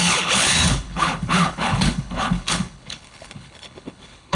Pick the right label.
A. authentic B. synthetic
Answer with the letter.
B